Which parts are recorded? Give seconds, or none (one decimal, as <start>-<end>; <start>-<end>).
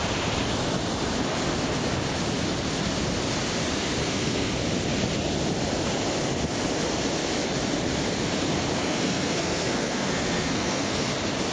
0.0-4.0; 4.6-8.8; 11.0-11.5